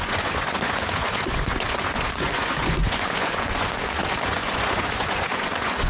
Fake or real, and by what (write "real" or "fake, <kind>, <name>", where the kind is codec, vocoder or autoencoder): fake, vocoder, Vocos